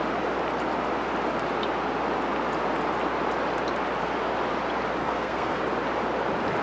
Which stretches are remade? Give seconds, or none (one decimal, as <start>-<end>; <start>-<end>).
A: 5.0-5.6